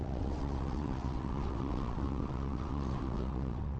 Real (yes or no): no